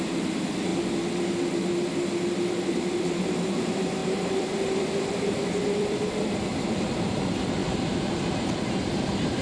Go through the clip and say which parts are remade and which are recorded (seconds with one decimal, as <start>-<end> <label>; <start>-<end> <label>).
0.0-0.7 remade; 0.7-2.5 recorded; 2.5-9.4 remade